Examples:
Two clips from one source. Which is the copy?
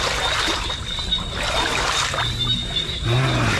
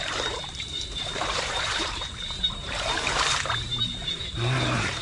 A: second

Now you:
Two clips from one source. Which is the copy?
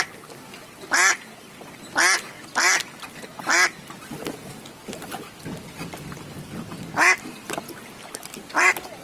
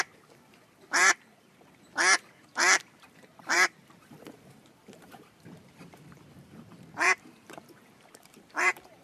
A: second